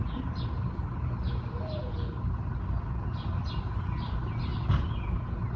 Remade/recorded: recorded